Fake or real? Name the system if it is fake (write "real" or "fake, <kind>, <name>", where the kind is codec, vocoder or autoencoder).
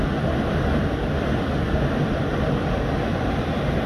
fake, vocoder, BigVGAN v2